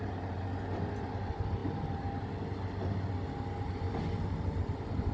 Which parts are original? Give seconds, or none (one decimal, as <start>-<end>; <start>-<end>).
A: 0.0-5.1